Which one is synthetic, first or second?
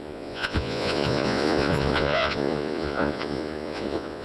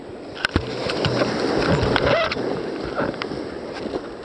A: first